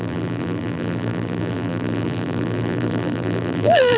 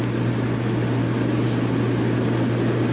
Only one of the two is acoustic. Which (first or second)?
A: second